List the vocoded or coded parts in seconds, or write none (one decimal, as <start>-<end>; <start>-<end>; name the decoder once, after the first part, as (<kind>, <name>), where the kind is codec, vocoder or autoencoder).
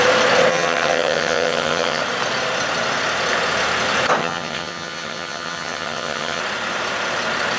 0.5-2.0 (vocoder, HiFi-GAN); 4.2-6.4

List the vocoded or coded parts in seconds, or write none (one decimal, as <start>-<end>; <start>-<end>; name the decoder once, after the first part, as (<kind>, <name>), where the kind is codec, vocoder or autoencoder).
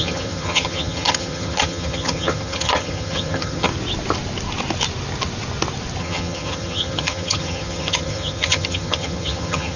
0.0-3.7 (vocoder, HiFi-GAN); 6.0-9.8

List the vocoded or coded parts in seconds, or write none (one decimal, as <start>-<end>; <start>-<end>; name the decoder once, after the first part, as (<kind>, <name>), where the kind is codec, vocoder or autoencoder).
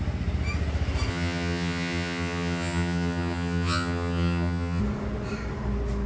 1.1-4.8 (vocoder, HiFi-GAN)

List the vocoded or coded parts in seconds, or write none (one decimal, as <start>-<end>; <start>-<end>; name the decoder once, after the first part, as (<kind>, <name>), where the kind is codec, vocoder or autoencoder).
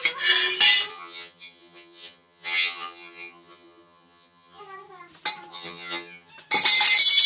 0.9-4.6 (vocoder, HiFi-GAN); 5.5-6.3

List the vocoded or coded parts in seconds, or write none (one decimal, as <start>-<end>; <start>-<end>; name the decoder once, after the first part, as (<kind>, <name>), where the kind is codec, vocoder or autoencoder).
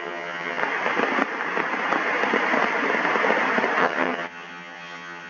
0.0-0.6 (vocoder, HiFi-GAN); 3.8-5.3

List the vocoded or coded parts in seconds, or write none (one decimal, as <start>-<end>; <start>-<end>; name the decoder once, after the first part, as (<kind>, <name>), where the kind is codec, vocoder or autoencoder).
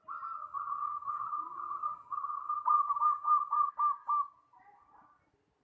0.4-3.7 (vocoder, HiFi-GAN)